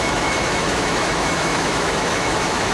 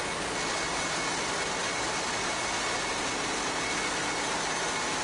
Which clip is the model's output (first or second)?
first